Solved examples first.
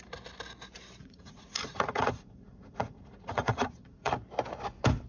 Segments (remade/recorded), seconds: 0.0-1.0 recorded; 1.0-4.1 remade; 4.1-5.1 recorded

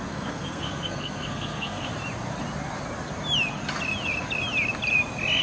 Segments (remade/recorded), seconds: 0.0-1.9 remade; 1.9-5.4 recorded

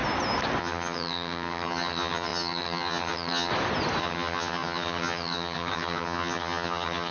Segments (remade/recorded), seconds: 0.0-0.6 recorded; 0.6-3.5 remade; 3.5-4.0 recorded; 4.0-7.1 remade

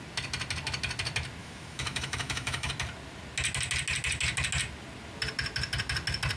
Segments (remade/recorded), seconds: 0.0-1.4 recorded; 1.4-2.7 remade; 2.7-6.4 recorded

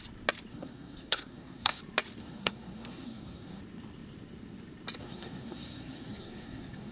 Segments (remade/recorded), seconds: 0.0-0.5 recorded; 0.5-1.8 remade; 1.8-2.2 recorded; 2.2-3.6 remade; 3.6-5.0 recorded; 5.0-6.9 remade

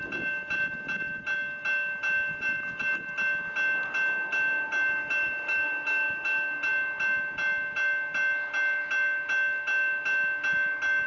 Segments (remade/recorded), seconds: 0.0-11.1 recorded

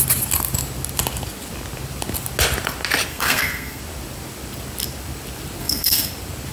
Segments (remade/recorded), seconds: 0.0-3.1 recorded; 3.1-3.8 remade; 3.8-5.6 recorded; 5.6-6.1 remade; 6.1-6.5 recorded